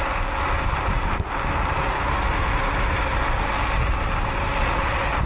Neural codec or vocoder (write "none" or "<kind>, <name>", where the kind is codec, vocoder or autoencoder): none